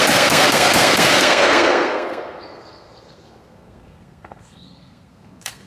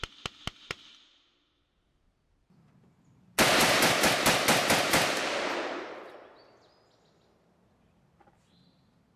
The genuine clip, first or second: second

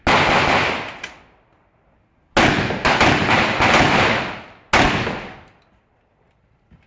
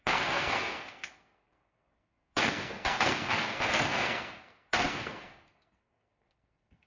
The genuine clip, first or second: first